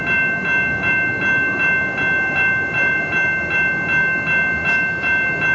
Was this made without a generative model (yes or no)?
yes